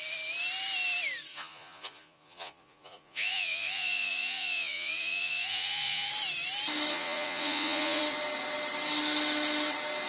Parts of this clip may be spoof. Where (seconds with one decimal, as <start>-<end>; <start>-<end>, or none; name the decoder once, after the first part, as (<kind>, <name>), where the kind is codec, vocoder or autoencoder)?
1.3-6.1 (vocoder, Vocos); 6.9-8.0